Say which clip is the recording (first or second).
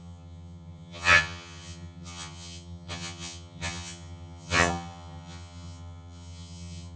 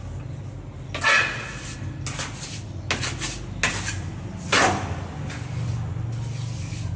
second